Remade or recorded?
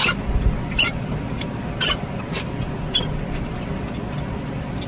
recorded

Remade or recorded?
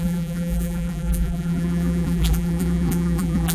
remade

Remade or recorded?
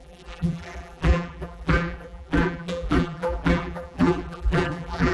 remade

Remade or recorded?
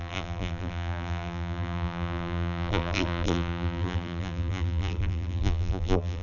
remade